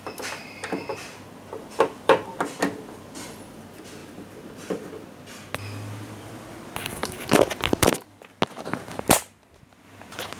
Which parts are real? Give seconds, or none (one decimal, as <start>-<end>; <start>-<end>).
0.0-10.4

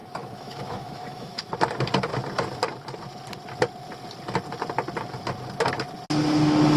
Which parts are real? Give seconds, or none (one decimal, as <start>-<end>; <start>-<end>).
1.5-6.8

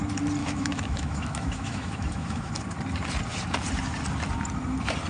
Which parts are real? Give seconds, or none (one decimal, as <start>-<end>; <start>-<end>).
0.0-0.4; 2.5-5.1

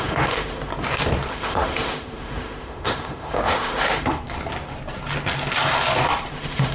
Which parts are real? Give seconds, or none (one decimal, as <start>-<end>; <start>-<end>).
0.7-1.3; 4.2-6.3

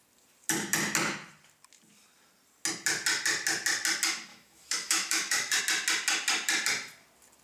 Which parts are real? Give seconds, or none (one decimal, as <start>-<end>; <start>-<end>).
0.0-4.3; 5.6-7.4

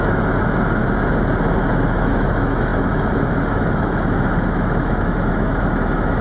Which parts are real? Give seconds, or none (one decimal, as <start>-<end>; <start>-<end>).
0.8-1.7

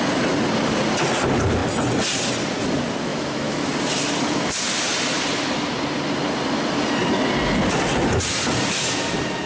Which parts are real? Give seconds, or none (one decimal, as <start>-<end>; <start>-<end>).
0.0-3.1; 3.7-9.5